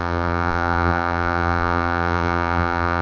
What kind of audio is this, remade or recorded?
remade